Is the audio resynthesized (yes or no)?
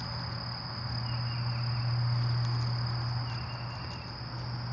no